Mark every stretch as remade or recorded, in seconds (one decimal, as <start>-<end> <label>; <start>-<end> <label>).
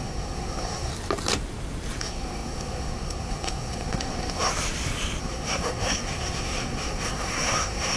0.0-0.9 remade; 0.9-2.0 recorded; 2.0-4.5 remade; 4.5-5.2 recorded; 5.2-8.0 remade